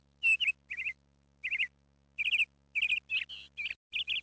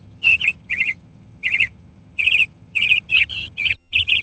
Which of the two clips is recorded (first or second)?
first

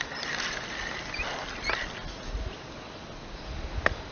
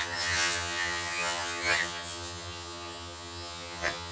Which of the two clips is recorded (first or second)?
first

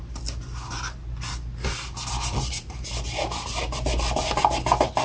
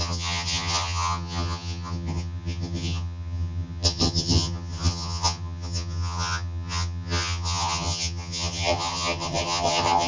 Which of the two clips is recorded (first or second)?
first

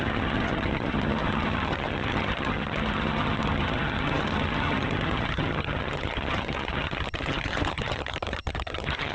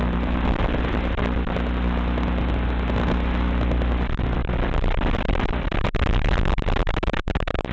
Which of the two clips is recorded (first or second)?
second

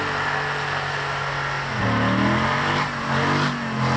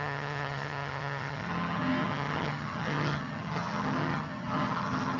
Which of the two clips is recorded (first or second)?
first